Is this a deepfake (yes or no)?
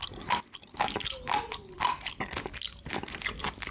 no